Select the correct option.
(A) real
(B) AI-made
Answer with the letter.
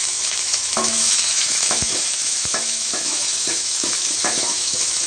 B